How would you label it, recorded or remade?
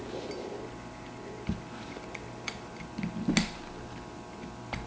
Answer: recorded